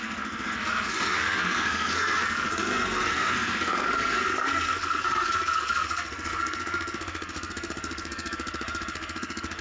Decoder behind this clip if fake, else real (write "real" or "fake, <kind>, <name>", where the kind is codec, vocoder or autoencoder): fake, codec, SNAC